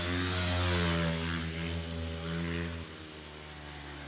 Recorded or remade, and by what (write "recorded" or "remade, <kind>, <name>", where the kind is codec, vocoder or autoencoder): recorded